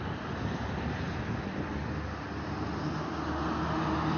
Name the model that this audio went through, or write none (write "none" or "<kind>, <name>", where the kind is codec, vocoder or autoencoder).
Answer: none